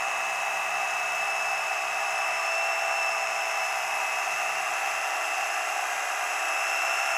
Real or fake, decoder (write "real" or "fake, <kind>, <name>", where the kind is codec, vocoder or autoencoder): fake, vocoder, BigVGAN v2